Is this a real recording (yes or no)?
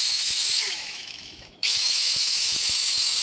no